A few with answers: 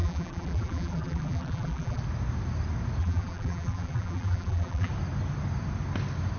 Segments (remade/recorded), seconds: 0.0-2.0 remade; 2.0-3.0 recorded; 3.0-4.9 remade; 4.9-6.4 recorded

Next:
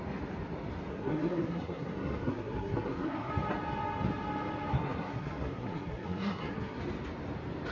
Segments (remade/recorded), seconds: 0.0-0.9 recorded; 0.9-3.3 remade; 3.3-4.7 recorded; 4.7-6.8 remade; 6.8-7.7 recorded

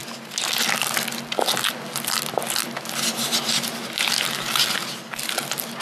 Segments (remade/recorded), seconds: 0.0-5.8 recorded

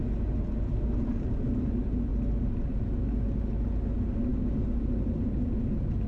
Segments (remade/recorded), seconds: 0.0-2.1 recorded; 2.1-2.7 remade; 2.7-6.1 recorded

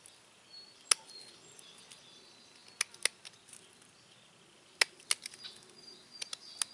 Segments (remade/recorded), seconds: 0.0-6.7 recorded